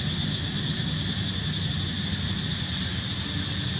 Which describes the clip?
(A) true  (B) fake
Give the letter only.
A